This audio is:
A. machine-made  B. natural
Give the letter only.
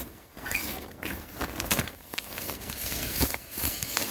A